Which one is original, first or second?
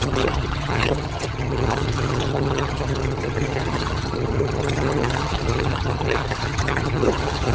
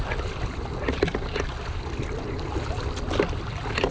second